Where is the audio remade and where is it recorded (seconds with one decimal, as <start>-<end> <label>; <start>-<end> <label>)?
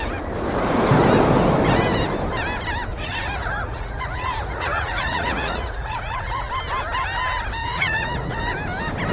0.0-2.9 recorded; 2.9-6.5 remade; 6.5-7.6 recorded; 7.6-8.4 remade; 8.4-9.1 recorded